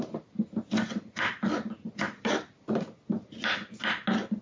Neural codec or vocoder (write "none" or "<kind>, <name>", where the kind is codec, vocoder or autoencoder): none